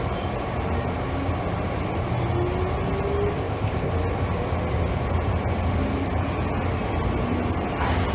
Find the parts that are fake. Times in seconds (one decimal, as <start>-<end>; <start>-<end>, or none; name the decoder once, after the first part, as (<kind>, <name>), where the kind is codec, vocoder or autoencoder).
3.4-3.9 (codec, ZipCodec)